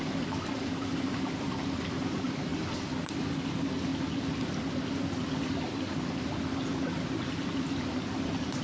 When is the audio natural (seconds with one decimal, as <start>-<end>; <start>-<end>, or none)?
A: 0.0-8.6